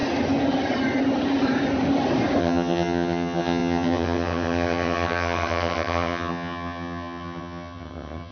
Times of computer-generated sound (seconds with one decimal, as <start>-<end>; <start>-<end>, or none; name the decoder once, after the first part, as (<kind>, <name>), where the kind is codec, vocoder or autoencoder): 2.4-8.3 (vocoder, HiFi-GAN)